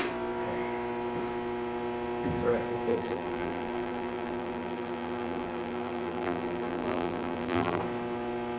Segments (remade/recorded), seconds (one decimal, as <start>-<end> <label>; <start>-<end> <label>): 0.0-2.9 recorded; 2.9-7.8 remade; 7.8-8.6 recorded

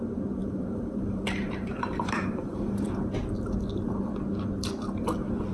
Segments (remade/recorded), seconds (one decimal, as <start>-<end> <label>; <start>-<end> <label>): 0.0-0.4 recorded; 0.4-2.9 remade; 2.9-5.5 recorded

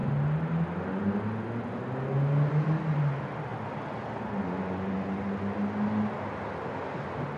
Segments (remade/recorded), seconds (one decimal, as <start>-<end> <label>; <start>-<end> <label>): 0.0-7.4 recorded

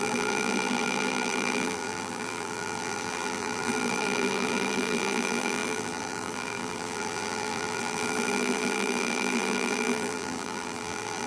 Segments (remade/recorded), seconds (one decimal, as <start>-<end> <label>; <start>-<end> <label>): 0.0-11.3 remade

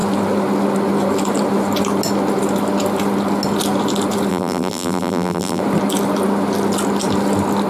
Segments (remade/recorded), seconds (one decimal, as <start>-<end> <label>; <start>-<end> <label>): 0.0-4.3 recorded; 4.3-5.6 remade; 5.6-7.7 recorded

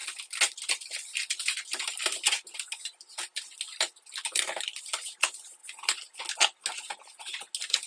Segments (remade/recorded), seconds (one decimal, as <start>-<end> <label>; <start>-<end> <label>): 0.0-7.9 recorded

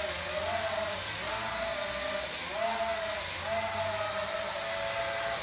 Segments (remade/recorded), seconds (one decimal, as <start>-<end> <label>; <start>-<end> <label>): 0.0-5.4 recorded

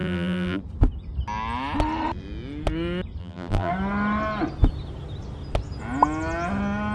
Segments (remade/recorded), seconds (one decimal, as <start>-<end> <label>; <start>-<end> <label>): 0.0-0.6 remade; 0.6-3.2 recorded; 3.2-3.7 remade; 3.7-6.9 recorded